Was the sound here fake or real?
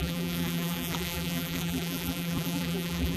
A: fake